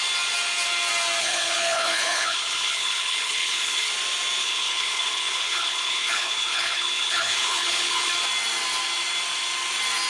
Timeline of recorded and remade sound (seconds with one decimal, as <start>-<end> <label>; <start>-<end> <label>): 0.0-1.2 recorded; 1.2-3.9 remade; 3.9-4.4 recorded; 4.4-8.1 remade; 8.1-10.1 recorded